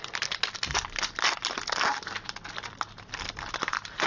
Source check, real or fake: real